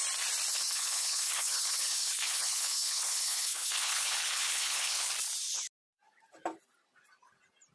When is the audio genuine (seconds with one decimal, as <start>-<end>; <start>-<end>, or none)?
0.0-0.5; 5.1-7.7